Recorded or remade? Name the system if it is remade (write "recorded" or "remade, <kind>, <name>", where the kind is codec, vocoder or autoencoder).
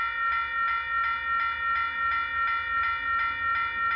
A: recorded